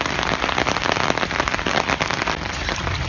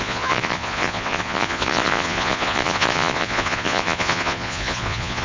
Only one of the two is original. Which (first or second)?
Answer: first